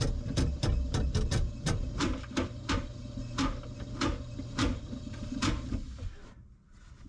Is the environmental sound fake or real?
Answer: real